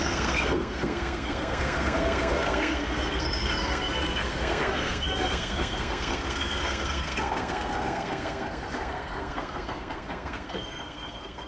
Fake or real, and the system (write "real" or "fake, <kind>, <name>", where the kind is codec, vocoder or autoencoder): fake, codec, SNAC